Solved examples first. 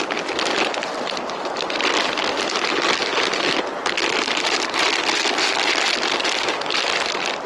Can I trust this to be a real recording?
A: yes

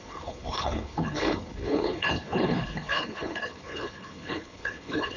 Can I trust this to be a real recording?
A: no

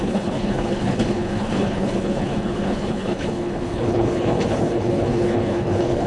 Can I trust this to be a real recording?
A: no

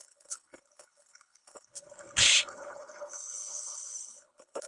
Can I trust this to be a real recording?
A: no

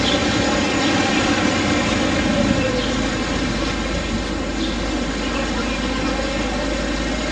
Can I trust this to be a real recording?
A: yes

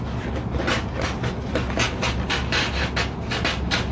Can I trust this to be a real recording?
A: yes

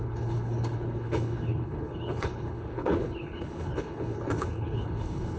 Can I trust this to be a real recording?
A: no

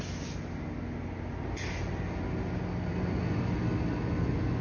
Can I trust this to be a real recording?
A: yes